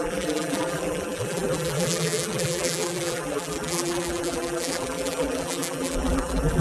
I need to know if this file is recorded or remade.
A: remade